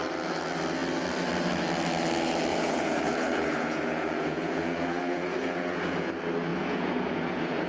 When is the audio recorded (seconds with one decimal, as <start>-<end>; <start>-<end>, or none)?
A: 0.0-2.5; 6.1-6.5